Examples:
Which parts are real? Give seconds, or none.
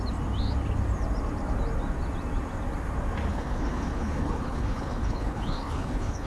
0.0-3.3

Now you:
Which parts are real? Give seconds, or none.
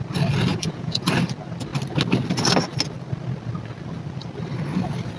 0.0-0.5; 1.1-5.2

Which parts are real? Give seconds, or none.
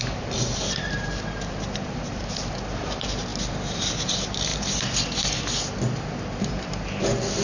4.5-6.4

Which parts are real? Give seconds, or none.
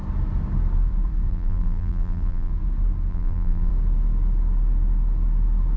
0.0-1.3; 2.5-3.1; 3.7-5.8